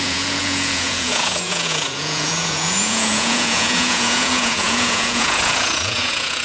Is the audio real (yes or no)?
no